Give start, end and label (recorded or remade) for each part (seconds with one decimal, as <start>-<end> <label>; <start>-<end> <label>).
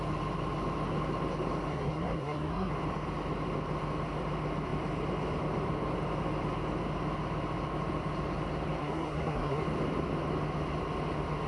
0.0-1.7 recorded; 1.7-2.7 remade; 2.7-8.8 recorded; 8.8-9.6 remade; 9.6-11.5 recorded